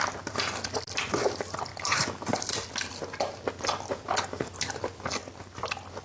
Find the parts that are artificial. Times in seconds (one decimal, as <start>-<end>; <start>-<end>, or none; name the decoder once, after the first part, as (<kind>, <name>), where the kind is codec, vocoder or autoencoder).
none